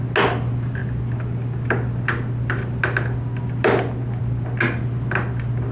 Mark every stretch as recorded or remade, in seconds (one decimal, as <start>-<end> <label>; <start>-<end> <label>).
0.0-5.7 recorded